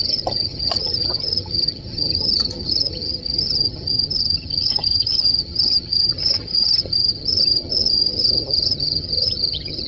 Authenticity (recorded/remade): remade